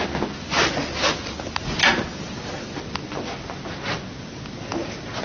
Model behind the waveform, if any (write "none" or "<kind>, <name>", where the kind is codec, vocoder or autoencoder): none